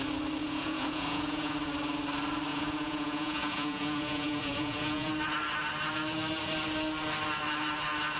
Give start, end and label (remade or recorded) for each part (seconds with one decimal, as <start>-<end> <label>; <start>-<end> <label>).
0.0-0.4 recorded; 0.4-1.5 remade; 1.5-2.5 recorded; 2.5-5.1 remade; 5.1-8.2 recorded